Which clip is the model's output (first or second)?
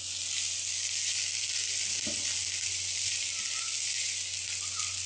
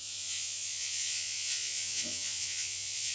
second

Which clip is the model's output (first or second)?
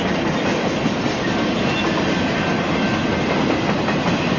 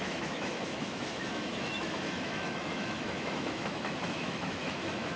second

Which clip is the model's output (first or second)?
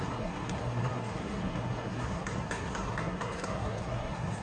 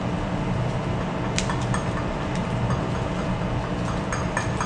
first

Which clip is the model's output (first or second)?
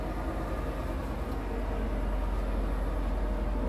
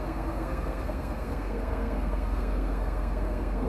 second